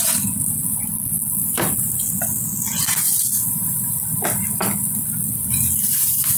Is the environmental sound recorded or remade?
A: recorded